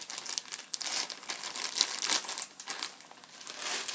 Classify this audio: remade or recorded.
recorded